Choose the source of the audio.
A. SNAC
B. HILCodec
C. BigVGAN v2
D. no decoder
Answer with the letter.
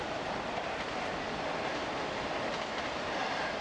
C